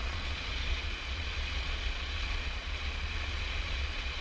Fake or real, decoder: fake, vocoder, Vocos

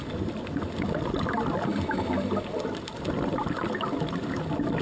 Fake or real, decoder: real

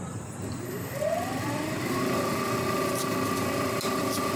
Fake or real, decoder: fake, vocoder, BigVGAN v2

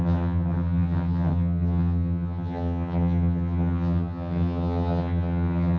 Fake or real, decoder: fake, vocoder, HiFi-GAN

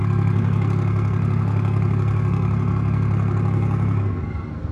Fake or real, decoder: fake, codec, SNAC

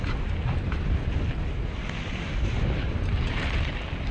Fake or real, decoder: real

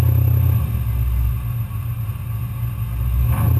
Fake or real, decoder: real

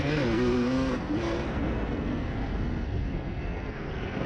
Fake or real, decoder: fake, codec, SNAC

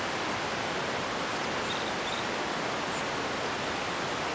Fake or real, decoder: real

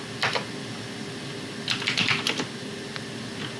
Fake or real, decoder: real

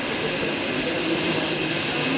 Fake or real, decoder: real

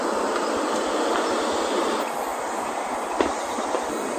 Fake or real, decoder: real